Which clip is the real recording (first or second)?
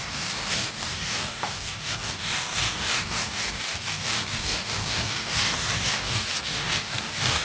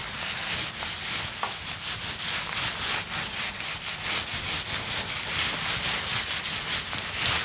second